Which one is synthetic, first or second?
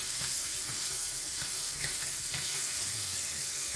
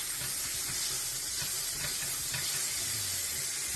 first